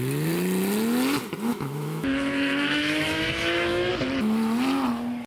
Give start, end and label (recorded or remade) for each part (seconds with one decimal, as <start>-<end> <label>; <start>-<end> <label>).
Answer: 0.0-1.5 recorded; 1.5-3.9 remade; 3.9-5.3 recorded